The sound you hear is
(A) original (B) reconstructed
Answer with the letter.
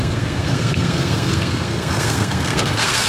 B